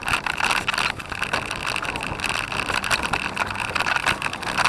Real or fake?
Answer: real